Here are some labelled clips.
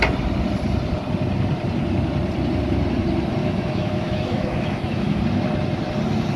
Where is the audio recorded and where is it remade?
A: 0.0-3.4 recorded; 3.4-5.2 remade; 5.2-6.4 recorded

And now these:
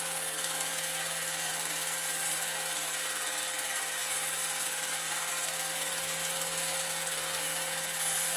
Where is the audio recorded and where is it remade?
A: 0.0-8.4 remade